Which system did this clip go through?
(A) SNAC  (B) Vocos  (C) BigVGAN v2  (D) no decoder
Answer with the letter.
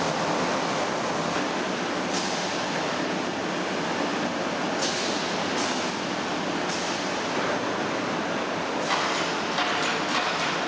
D